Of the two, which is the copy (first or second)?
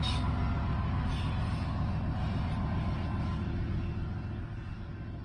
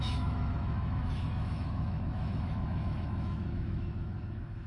second